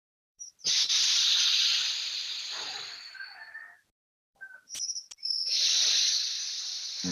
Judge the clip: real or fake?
fake